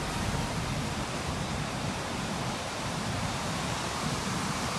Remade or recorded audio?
remade